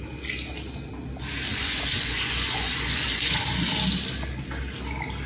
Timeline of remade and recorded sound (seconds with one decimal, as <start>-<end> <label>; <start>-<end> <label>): 0.0-1.5 recorded; 1.5-3.5 remade; 3.5-5.3 recorded